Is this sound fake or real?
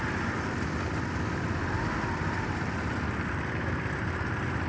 real